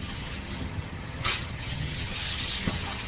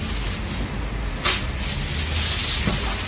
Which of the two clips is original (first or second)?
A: second